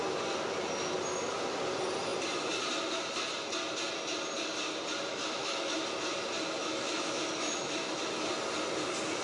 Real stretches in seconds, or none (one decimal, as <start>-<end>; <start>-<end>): 0.0-5.1; 5.8-6.6; 8.0-9.2